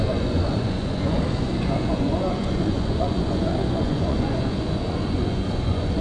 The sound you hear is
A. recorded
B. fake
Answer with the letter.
B